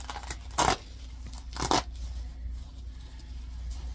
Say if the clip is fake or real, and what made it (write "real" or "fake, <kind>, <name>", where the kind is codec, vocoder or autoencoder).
real